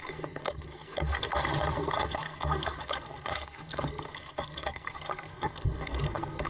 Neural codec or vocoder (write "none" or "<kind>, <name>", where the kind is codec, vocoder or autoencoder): codec, SNAC